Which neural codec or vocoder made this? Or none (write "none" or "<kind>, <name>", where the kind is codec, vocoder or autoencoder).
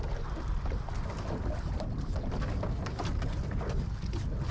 none